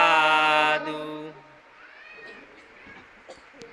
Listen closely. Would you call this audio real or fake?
real